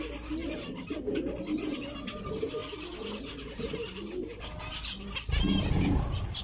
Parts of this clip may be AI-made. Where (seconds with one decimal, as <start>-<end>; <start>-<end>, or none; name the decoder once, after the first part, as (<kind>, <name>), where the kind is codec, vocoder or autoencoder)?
0.4-1.0 (vocoder, BigVGAN v2)